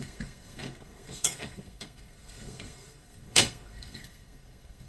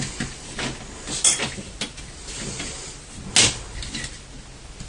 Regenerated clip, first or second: first